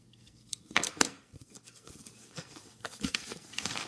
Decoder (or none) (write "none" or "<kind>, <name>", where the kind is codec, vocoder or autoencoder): codec, SNAC